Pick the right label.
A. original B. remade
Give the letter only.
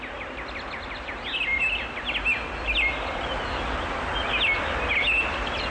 A